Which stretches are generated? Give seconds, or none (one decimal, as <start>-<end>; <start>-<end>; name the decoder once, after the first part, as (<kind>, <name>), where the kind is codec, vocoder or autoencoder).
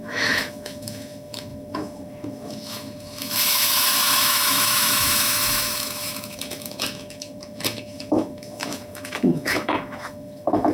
0.0-10.7 (autoencoder, DAC-VAE)